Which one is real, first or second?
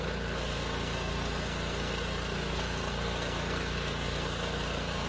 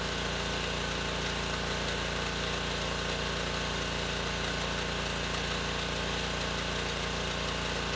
second